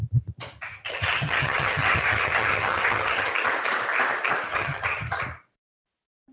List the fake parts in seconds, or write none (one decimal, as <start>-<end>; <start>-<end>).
0.7-3.3; 4.5-5.2